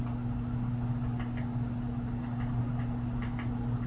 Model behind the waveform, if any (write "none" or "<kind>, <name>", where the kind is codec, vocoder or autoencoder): none